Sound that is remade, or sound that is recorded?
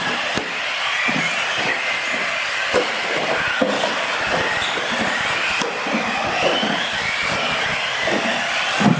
recorded